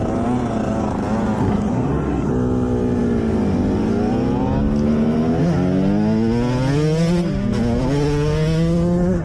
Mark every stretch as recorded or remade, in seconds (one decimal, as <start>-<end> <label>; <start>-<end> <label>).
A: 0.0-1.4 recorded; 1.4-2.3 remade; 2.3-9.2 recorded